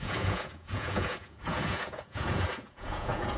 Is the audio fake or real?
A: fake